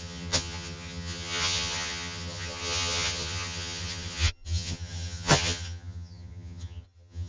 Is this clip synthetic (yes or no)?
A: yes